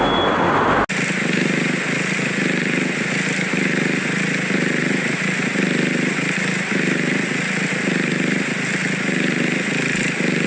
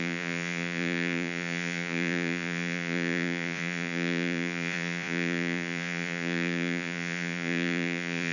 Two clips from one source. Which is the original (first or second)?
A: first